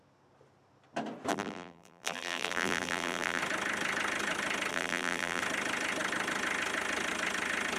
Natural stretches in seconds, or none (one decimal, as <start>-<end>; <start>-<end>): 0.0-1.3; 3.4-4.7; 5.4-7.8